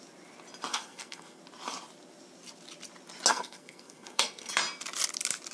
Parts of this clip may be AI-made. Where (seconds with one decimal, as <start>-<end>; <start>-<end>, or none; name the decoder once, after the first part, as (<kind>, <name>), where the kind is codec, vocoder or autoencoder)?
0.7-1.4 (codec, SNAC); 3.3-4.5